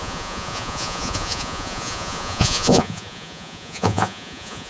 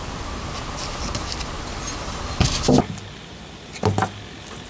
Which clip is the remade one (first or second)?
first